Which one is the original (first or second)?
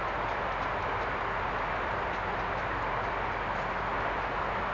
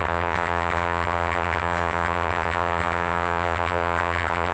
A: first